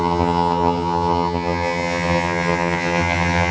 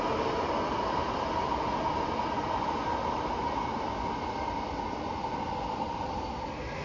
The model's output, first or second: first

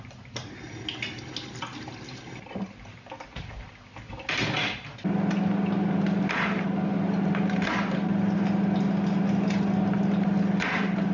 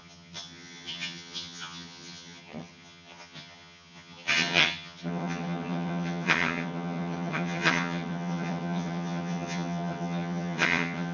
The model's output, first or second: second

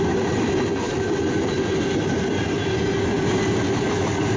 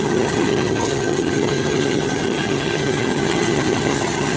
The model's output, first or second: second